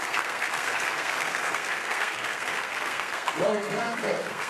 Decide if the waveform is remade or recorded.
remade